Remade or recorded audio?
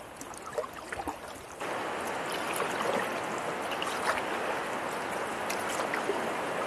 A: recorded